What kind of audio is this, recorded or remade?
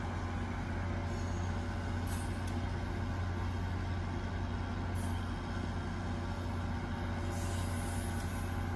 recorded